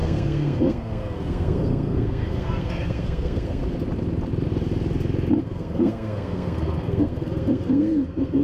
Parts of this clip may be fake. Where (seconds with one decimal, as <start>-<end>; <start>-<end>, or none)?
0.0-3.6; 5.4-8.4